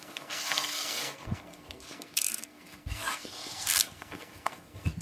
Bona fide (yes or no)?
no